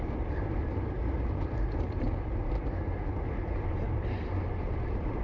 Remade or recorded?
remade